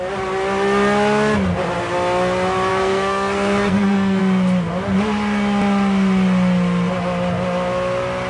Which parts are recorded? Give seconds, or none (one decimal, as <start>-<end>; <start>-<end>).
0.0-2.7; 4.2-8.3